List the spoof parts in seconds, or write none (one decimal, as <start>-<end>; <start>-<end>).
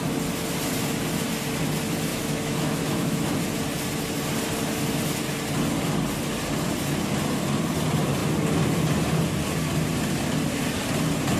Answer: 2.1-3.3